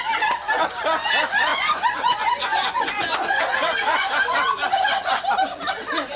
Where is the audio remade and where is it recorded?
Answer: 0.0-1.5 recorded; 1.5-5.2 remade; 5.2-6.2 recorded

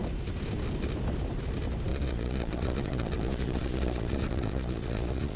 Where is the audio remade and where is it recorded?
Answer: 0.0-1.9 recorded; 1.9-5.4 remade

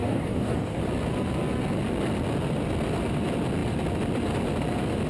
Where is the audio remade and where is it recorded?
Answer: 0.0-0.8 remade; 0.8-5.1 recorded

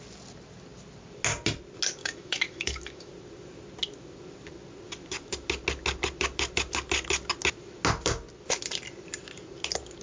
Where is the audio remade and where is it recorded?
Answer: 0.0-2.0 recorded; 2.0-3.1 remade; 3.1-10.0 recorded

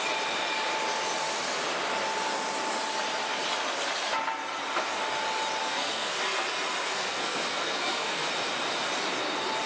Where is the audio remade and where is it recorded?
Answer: 0.0-5.6 recorded; 5.6-6.2 remade; 6.2-6.8 recorded; 6.8-8.3 remade; 8.3-9.7 recorded